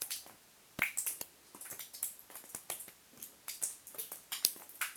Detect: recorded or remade recorded